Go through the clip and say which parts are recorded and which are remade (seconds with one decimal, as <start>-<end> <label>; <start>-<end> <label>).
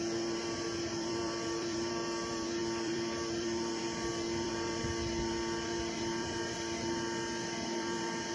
0.0-8.3 remade